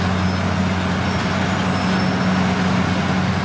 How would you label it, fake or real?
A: real